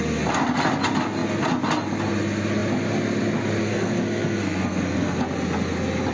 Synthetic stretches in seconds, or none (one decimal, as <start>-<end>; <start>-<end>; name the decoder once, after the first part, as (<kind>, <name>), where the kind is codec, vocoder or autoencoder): 3.6-5.2 (codec, SNAC)